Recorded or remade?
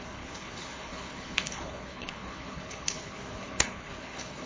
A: remade